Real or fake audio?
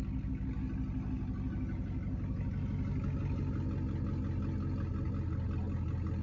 real